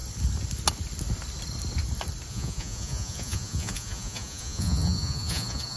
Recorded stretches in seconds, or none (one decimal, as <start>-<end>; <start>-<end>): 0.0-2.3